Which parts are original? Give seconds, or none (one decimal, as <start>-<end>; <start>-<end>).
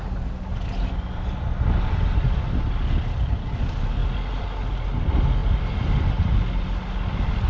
0.0-7.5